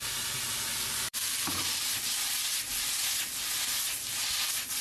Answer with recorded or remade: recorded